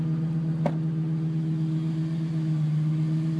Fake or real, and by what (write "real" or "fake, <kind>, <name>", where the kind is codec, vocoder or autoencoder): real